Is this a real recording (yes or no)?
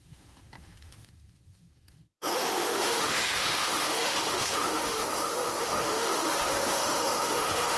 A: no